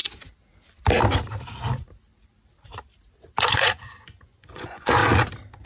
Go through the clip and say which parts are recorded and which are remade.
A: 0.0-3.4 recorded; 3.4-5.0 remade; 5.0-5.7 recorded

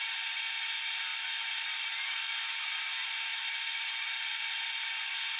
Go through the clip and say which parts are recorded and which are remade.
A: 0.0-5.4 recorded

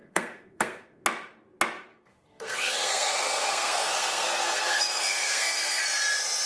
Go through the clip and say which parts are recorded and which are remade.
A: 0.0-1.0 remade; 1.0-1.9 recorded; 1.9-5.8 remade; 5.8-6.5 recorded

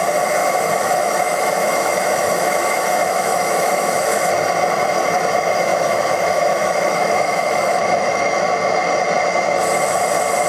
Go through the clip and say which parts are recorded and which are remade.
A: 0.0-0.4 recorded; 0.4-4.3 remade; 4.3-5.7 recorded; 5.7-8.4 remade; 8.4-10.5 recorded